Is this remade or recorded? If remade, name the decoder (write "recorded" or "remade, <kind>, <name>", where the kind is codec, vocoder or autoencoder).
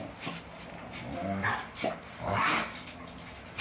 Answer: recorded